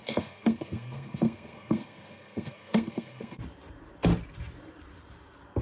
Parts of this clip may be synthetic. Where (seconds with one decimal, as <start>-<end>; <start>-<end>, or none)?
0.0-3.4